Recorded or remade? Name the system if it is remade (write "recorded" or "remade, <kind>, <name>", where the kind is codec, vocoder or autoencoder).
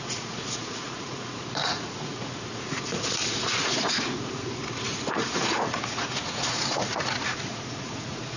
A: remade, vocoder, Vocos